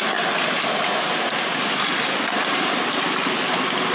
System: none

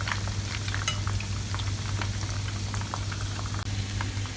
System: none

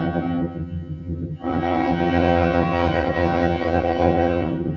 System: vocoder, HiFi-GAN